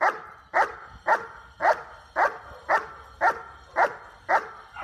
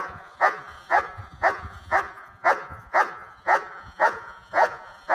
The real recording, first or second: first